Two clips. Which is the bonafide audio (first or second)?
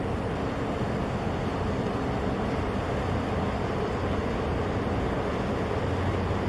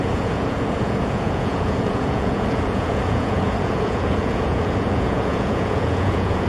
first